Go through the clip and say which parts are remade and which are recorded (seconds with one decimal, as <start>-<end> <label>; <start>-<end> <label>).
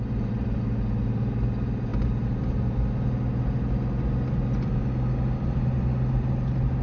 0.0-6.8 recorded